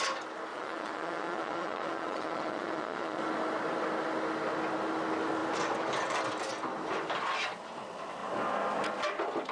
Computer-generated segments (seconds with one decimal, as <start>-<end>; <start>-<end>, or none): 0.5-3.2